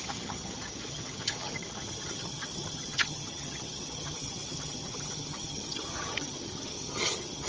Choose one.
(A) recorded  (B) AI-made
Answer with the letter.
B